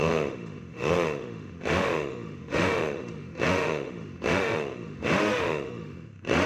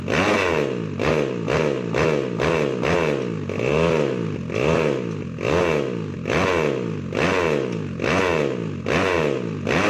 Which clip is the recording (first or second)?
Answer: second